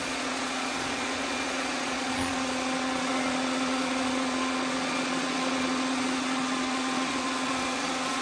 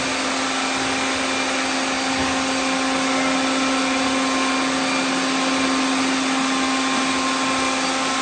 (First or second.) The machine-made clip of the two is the first